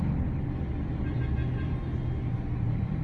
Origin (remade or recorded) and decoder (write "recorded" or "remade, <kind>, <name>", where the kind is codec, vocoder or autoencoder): recorded